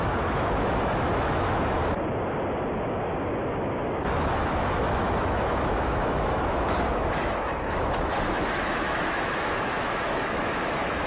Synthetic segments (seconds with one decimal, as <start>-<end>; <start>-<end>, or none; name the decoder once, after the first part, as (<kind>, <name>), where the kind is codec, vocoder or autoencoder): 0.0-1.8 (autoencoder, DAC-VAE); 3.8-11.1